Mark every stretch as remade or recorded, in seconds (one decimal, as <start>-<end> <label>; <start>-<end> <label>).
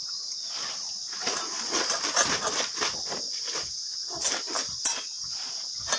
0.0-6.0 recorded